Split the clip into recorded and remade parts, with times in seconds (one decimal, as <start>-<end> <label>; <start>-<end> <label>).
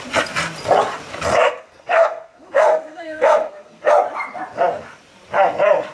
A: 0.0-1.3 recorded; 1.3-3.9 remade; 3.9-5.9 recorded